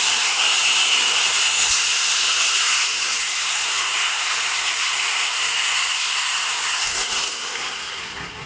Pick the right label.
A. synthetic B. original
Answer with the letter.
A